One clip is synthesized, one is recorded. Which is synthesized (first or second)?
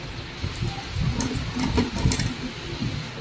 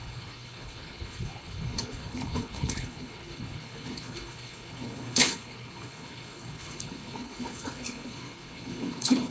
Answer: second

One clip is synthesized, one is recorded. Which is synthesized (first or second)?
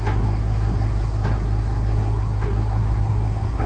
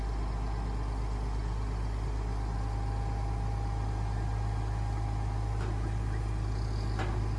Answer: first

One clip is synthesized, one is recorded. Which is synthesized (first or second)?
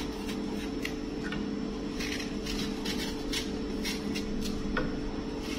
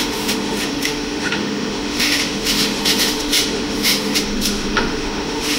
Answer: second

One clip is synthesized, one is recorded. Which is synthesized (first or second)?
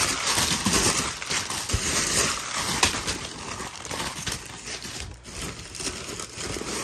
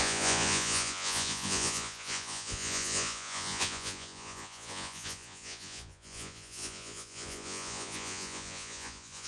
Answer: second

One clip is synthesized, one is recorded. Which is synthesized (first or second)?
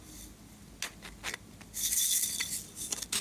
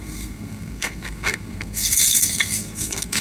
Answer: second